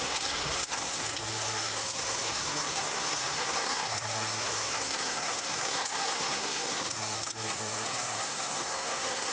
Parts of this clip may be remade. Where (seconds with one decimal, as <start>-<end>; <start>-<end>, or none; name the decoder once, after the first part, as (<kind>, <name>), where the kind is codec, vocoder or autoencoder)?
0.0-9.3 (codec, SNAC)